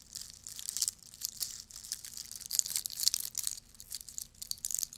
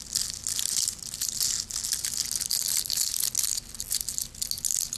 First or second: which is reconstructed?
first